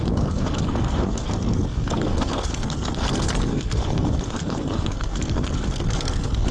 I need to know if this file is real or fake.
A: fake